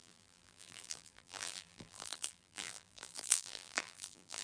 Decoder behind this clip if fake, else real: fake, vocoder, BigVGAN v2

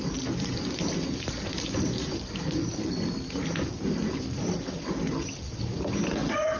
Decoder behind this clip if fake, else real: real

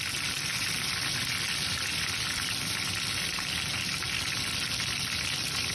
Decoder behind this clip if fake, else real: real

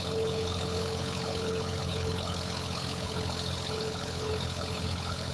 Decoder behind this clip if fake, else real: fake, codec, HILCodec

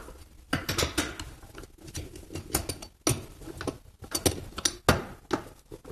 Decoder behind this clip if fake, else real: real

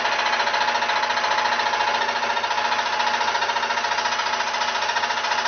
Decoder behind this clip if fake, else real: real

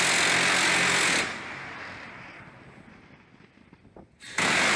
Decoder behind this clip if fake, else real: real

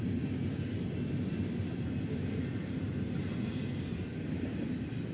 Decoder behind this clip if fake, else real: real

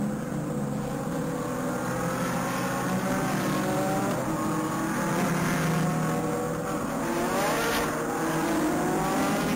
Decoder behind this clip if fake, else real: real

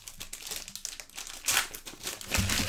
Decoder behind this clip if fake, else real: real